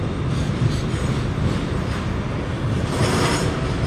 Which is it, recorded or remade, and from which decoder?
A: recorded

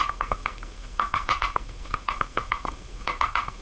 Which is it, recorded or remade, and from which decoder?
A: remade, codec, SNAC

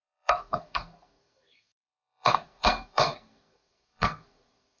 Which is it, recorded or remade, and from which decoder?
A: remade, codec, SNAC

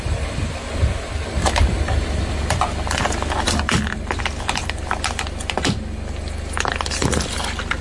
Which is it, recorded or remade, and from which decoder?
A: recorded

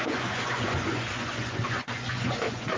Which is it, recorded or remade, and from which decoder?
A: remade, vocoder, Vocos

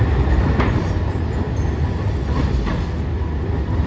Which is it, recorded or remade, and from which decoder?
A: recorded